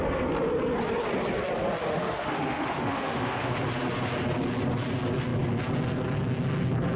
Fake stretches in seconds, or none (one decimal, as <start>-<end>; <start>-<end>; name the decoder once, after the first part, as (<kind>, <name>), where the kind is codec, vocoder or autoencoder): 1.9-3.5 (autoencoder, DAC-VAE)